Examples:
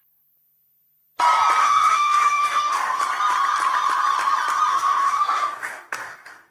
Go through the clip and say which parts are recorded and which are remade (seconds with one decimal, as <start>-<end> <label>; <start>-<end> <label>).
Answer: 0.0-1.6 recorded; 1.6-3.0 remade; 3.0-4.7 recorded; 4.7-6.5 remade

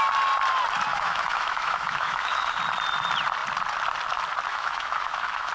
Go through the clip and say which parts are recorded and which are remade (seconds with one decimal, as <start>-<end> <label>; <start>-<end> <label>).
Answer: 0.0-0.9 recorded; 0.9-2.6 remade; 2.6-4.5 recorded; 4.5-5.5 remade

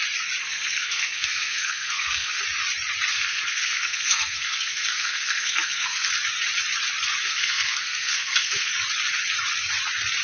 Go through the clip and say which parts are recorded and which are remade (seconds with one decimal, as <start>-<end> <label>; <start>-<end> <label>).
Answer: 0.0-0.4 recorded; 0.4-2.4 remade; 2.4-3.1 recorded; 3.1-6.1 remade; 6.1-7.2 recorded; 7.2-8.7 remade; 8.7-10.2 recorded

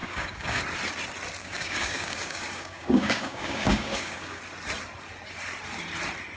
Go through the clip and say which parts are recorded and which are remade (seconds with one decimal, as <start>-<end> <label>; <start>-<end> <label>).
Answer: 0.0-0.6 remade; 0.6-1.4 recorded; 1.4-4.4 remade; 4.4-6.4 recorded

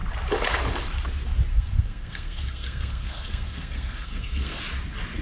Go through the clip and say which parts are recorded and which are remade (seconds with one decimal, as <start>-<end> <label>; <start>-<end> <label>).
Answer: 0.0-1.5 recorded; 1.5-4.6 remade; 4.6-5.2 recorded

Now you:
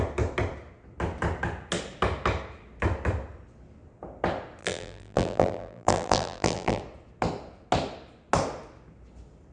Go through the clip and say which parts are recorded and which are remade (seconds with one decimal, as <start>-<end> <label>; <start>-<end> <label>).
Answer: 0.0-4.6 recorded; 4.6-6.8 remade; 6.8-9.5 recorded